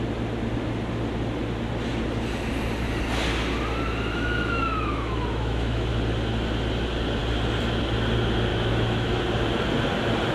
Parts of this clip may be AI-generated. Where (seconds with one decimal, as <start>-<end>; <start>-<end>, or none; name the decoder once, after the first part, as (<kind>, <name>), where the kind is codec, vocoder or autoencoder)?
4.1-5.9 (autoencoder, DAC-VAE); 8.5-9.2